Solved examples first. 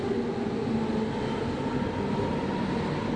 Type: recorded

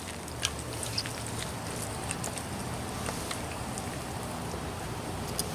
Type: recorded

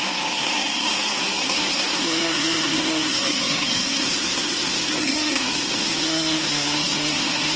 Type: remade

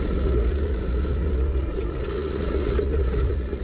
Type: remade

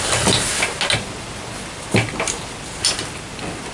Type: recorded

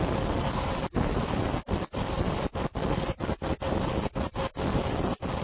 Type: recorded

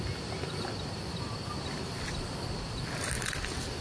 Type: recorded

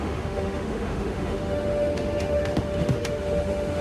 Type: remade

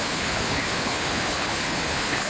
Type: remade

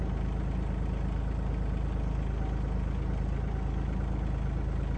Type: recorded